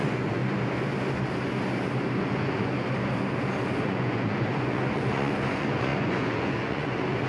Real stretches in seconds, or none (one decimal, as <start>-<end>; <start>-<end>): 0.4-2.2; 2.7-3.8